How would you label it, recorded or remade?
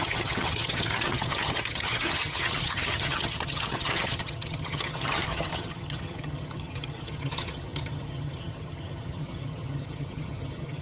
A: remade